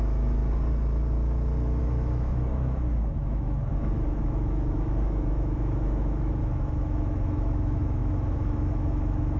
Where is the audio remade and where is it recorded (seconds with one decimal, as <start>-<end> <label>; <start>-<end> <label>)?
0.0-0.4 remade; 0.4-1.8 recorded; 1.8-9.4 remade